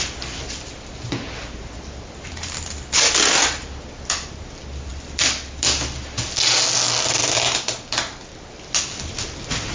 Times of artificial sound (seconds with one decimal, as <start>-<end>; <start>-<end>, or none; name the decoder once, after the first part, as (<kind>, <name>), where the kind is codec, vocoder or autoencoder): none